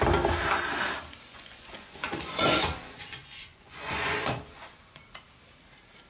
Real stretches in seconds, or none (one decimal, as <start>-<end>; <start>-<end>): 0.0-1.3; 5.0-6.1